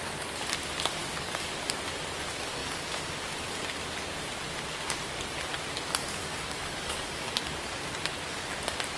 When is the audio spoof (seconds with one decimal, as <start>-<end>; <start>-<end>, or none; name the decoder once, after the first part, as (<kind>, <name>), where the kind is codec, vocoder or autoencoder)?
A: 1.0-1.5 (codec, DAC); 6.0-7.3